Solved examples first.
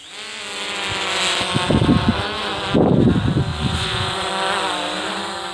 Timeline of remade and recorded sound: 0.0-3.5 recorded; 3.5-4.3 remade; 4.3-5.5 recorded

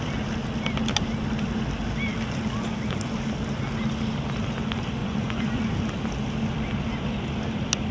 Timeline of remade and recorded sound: 0.0-5.0 recorded; 5.0-5.6 remade; 5.6-7.9 recorded

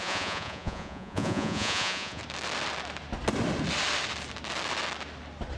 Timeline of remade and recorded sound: 0.0-2.2 remade; 2.2-5.6 recorded

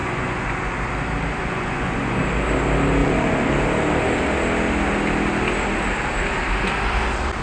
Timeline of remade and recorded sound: 0.0-0.7 remade; 0.7-1.4 recorded; 1.4-2.2 remade; 2.2-3.0 recorded; 3.0-3.5 remade; 3.5-7.4 recorded

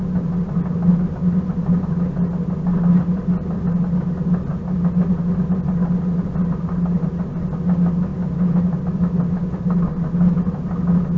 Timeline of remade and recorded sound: 0.0-11.2 recorded

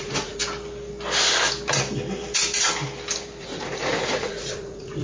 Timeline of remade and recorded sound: 0.0-0.4 remade; 0.4-3.4 recorded; 3.4-5.0 remade

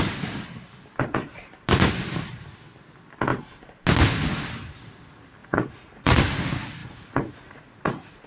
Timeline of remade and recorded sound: 0.0-5.4 recorded; 5.4-6.2 remade; 6.2-6.8 recorded; 6.8-8.3 remade

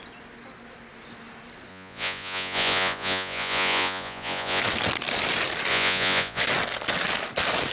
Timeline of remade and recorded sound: 0.0-1.7 recorded; 1.7-4.6 remade; 4.6-5.7 recorded; 5.7-6.4 remade; 6.4-7.7 recorded